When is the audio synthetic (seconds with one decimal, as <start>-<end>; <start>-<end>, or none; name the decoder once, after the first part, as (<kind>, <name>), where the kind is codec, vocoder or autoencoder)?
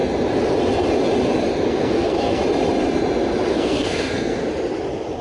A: 1.7-2.4 (codec, SNAC); 3.5-4.4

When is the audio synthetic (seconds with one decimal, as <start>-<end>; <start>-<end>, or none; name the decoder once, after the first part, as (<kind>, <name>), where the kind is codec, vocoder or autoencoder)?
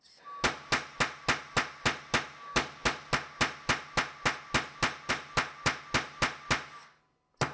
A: none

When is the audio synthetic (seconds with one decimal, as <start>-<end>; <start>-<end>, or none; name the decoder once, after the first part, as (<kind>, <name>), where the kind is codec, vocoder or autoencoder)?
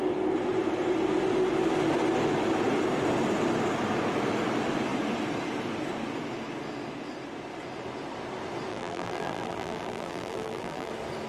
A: 8.7-10.9 (vocoder, BigVGAN v2)